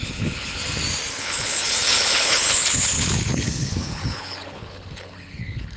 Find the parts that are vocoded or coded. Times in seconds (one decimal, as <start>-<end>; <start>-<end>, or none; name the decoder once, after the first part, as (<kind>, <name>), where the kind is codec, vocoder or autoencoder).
0.0-0.6 (codec, HILCodec); 1.1-5.8